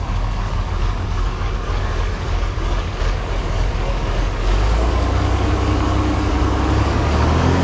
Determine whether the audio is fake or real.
fake